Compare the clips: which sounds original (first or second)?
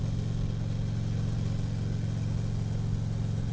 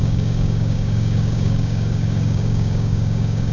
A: first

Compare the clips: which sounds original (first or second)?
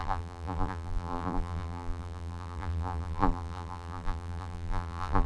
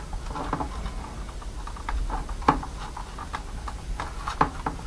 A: second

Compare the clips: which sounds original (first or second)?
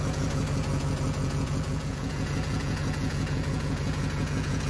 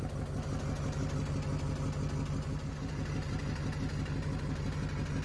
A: second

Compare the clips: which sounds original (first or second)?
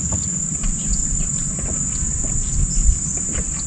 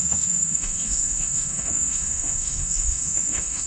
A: first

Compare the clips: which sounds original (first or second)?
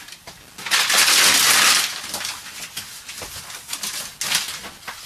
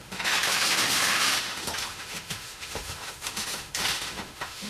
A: first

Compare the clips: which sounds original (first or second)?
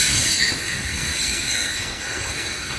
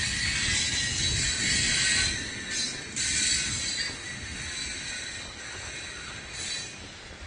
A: second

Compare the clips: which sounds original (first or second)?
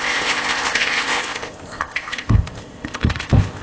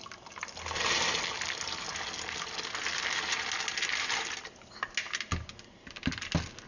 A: second